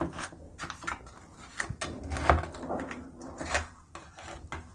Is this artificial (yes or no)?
no